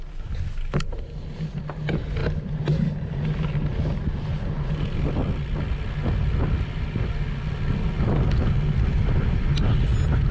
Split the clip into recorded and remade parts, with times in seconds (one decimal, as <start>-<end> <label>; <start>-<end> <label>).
0.0-10.3 recorded